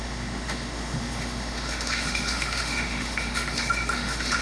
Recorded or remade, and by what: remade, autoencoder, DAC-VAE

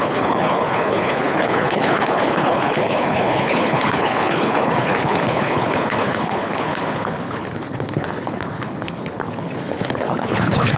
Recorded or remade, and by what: remade, codec, HILCodec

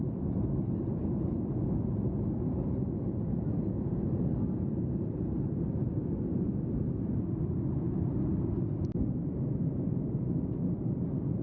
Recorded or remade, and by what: recorded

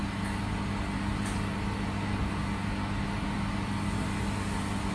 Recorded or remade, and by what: recorded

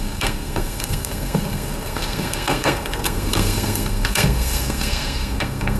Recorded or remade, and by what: remade, codec, SNAC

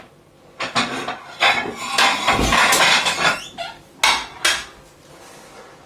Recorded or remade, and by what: recorded